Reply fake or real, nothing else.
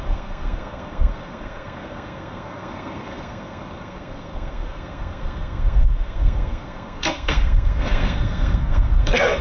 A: fake